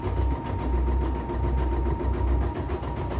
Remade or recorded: recorded